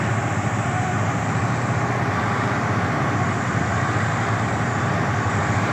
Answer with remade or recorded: remade